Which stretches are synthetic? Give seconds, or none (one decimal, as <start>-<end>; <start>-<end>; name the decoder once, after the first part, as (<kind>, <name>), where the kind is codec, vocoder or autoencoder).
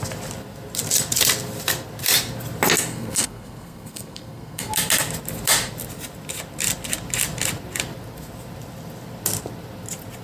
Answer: 2.9-4.7 (codec, SNAC)